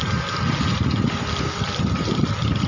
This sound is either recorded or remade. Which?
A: recorded